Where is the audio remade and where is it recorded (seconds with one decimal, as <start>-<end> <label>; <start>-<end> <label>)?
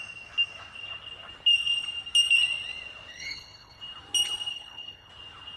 0.0-3.1 recorded; 3.1-3.8 remade; 3.8-4.5 recorded; 4.5-5.1 remade; 5.1-5.6 recorded